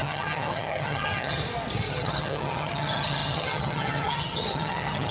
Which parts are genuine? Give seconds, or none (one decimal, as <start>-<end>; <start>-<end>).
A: 1.4-1.9